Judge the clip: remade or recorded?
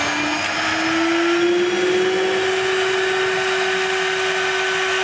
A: recorded